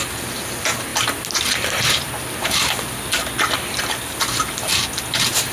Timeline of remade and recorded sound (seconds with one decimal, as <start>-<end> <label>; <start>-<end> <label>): 0.0-5.5 recorded